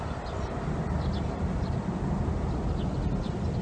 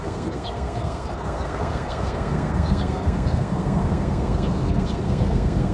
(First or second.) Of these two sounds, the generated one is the second